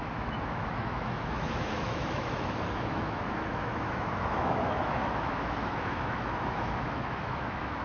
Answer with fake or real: fake